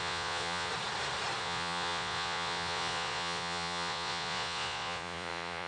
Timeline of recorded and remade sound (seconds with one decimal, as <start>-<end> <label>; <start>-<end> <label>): 0.0-0.7 remade; 0.7-1.4 recorded; 1.4-5.7 remade